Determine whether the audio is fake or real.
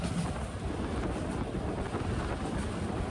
real